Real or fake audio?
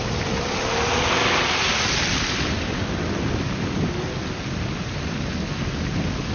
real